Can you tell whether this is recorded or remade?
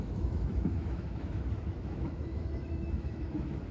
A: remade